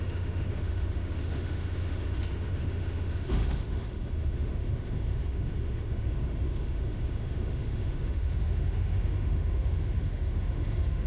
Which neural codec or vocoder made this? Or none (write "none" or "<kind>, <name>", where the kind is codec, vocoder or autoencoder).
autoencoder, DAC-VAE